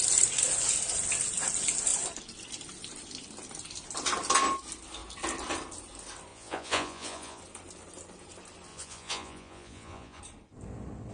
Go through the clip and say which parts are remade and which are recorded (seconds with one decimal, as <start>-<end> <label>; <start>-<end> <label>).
0.0-6.3 recorded; 6.3-7.4 remade; 7.4-8.7 recorded; 8.7-10.2 remade; 10.2-11.1 recorded